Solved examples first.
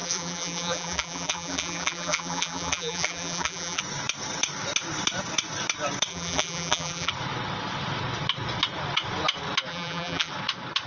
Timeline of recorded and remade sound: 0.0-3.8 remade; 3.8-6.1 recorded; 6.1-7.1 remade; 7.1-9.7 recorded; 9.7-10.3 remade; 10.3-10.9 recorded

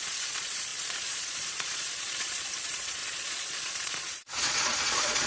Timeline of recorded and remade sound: 0.0-5.3 remade

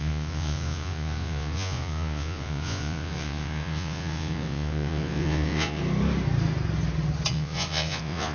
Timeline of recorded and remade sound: 0.0-5.8 remade; 5.8-7.3 recorded; 7.3-8.3 remade

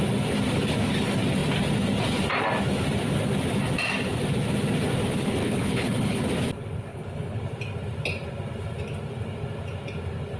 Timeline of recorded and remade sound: 0.0-5.4 recorded; 5.4-6.2 remade; 6.2-6.9 recorded; 6.9-7.4 remade; 7.4-10.4 recorded

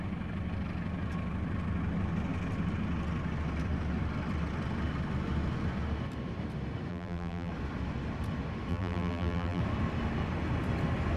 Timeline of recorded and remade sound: 0.0-6.9 recorded; 6.9-7.5 remade; 7.5-8.7 recorded; 8.7-9.6 remade; 9.6-11.2 recorded